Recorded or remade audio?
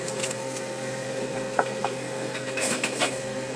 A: remade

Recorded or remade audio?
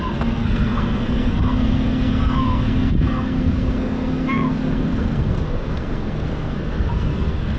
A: remade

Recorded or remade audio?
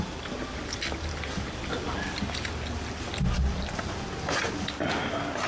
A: recorded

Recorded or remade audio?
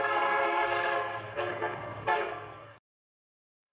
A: remade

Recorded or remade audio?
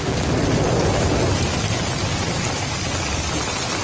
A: recorded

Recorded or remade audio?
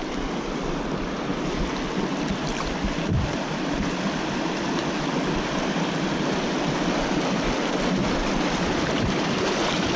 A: recorded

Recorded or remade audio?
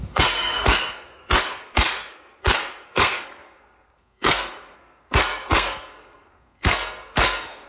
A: remade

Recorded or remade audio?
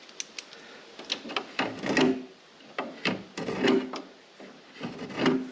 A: recorded